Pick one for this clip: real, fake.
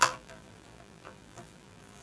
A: fake